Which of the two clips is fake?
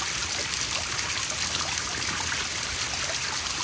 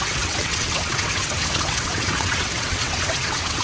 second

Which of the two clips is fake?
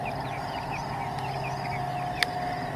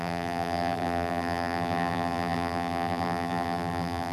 second